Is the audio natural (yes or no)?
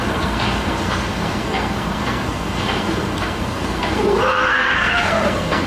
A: no